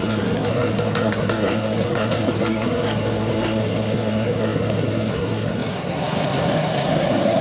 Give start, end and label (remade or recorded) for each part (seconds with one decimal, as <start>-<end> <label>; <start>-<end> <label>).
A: 0.0-7.4 remade